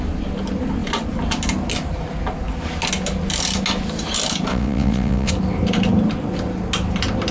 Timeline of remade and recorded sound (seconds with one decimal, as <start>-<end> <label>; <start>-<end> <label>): 0.0-4.5 recorded; 4.5-5.3 remade; 5.3-7.3 recorded